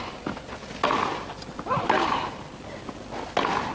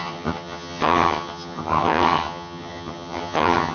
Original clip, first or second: first